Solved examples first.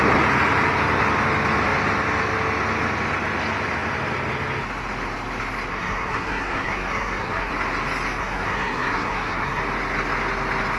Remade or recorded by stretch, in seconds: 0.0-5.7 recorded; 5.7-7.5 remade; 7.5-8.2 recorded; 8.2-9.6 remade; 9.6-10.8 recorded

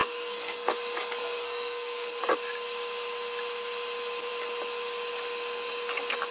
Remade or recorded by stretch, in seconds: 0.0-0.7 remade; 0.7-1.2 recorded; 1.2-2.2 remade; 2.2-6.3 recorded

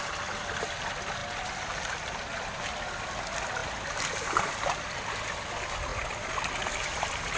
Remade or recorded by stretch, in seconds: 0.0-7.4 recorded